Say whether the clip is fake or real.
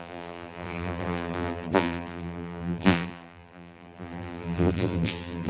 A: fake